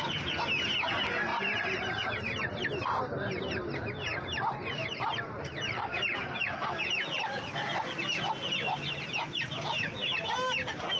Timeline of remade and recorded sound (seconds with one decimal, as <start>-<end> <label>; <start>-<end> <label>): 0.0-1.3 recorded; 1.3-3.3 remade; 3.3-4.8 recorded; 4.8-6.1 remade; 6.1-7.1 recorded; 7.1-7.8 remade; 7.8-11.0 recorded